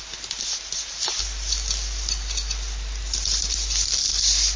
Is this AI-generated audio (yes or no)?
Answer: no